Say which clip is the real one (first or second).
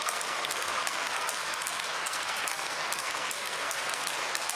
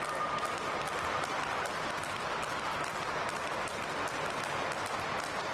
second